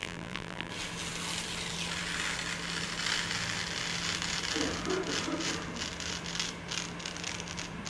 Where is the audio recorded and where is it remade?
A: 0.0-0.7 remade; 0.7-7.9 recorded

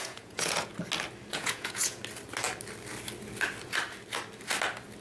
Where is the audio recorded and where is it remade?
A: 0.0-0.7 remade; 0.7-1.3 recorded; 1.3-2.0 remade; 2.0-5.0 recorded

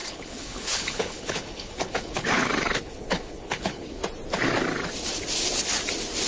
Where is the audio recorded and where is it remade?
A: 0.0-4.0 remade; 4.0-6.3 recorded

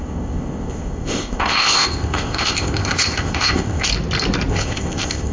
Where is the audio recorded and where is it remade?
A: 0.0-3.9 remade; 3.9-4.5 recorded; 4.5-5.3 remade